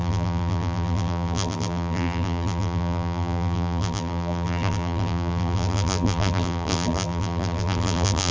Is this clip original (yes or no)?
no